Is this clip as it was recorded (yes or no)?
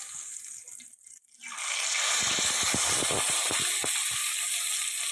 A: yes